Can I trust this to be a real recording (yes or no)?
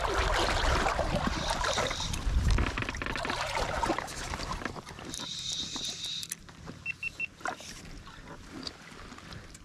yes